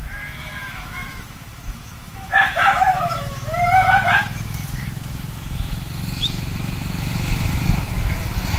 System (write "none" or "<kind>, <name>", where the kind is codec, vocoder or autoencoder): autoencoder, DAC-VAE